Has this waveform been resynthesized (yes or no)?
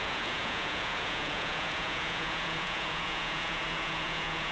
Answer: yes